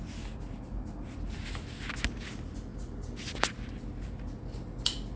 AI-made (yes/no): no